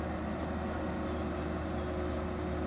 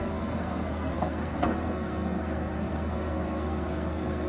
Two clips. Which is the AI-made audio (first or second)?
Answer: second